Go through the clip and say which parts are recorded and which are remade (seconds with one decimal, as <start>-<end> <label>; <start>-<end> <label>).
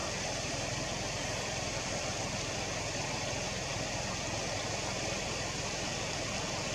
0.0-2.2 remade; 2.2-6.7 recorded